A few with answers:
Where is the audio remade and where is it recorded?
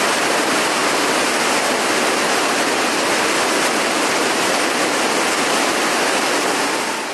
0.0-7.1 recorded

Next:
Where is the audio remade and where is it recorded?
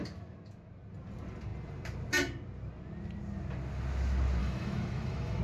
0.0-4.4 recorded; 4.4-5.4 remade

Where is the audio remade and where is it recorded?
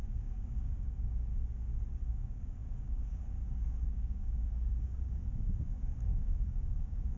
0.0-1.3 remade; 1.3-2.1 recorded; 2.1-7.2 remade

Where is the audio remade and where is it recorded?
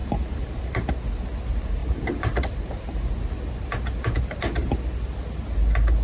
0.0-0.9 remade; 0.9-1.8 recorded; 1.8-3.2 remade; 3.2-6.0 recorded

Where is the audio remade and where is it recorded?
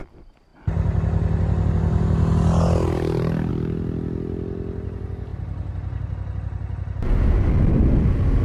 0.0-8.4 recorded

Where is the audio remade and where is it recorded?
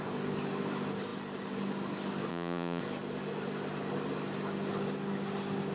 0.0-2.3 recorded; 2.3-2.8 remade; 2.8-5.7 recorded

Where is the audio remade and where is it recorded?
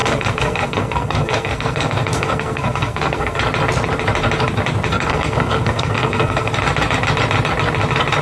0.0-3.4 remade; 3.4-4.9 recorded; 4.9-6.5 remade; 6.5-8.2 recorded